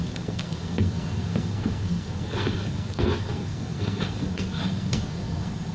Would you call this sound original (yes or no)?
no